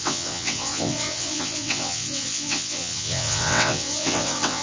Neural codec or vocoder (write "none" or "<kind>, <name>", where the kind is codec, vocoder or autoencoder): vocoder, WaveNeXt